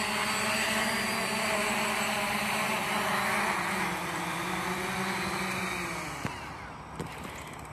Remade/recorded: recorded